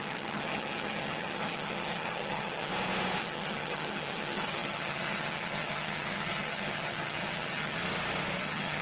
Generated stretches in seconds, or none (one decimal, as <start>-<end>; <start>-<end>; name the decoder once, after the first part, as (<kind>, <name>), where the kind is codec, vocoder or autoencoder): 0.0-2.7 (vocoder, HiFi-GAN); 3.2-7.8; 8.4-8.8